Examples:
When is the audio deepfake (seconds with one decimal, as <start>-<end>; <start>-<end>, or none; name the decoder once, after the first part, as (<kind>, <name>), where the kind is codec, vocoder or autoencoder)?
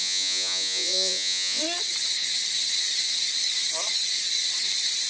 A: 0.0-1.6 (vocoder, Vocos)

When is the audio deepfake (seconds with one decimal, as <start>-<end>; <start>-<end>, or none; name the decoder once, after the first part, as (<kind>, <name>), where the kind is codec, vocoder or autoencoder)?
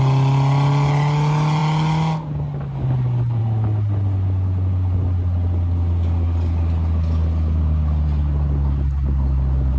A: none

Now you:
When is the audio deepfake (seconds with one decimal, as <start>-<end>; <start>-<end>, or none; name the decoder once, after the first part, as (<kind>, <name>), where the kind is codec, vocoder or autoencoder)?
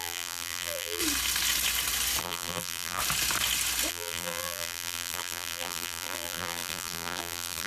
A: 0.0-1.0 (vocoder, BigVGAN v2); 2.2-3.0; 3.9-7.7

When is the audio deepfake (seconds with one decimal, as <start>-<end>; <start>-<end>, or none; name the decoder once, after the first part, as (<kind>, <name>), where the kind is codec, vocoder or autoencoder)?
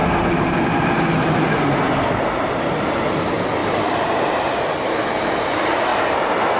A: 5.9-6.6 (vocoder, BigVGAN v2)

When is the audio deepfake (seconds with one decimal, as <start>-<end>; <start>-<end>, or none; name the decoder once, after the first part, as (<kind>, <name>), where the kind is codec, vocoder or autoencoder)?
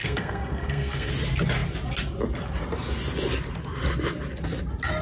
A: 0.0-1.1 (codec, SNAC)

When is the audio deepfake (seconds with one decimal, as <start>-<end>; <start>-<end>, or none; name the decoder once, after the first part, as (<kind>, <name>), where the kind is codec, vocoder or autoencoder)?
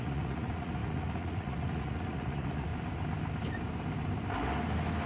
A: 0.0-2.7 (vocoder, Vocos)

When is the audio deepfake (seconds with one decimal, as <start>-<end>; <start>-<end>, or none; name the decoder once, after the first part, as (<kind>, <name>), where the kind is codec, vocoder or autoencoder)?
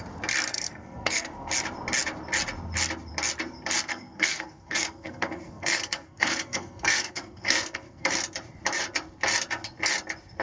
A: 0.5-1.5 (codec, SNAC); 3.9-8.1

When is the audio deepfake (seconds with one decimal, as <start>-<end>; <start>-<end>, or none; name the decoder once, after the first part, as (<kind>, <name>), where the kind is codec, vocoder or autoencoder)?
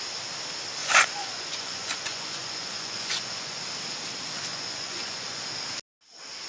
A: 0.8-3.6 (vocoder, Vocos); 4.5-5.4